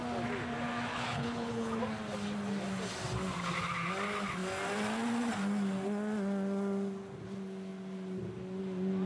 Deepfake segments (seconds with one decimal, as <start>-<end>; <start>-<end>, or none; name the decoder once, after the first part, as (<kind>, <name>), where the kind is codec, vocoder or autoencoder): 0.9-1.8 (codec, HILCodec)

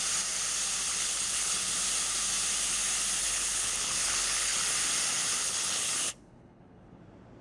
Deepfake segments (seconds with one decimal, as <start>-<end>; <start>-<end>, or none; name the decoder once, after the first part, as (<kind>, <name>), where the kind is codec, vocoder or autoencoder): 0.9-1.7 (codec, HILCodec); 3.2-4.7; 5.4-7.0

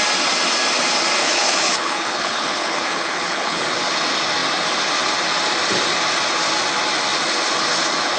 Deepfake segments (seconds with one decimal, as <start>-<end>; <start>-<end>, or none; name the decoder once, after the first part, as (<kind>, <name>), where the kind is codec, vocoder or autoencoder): 1.2-3.6 (codec, HILCodec)

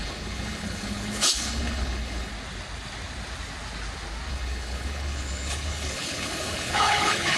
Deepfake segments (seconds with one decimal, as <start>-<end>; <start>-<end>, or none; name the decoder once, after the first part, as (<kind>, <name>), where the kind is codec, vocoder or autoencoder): 0.0-2.3 (codec, HILCodec); 4.3-7.4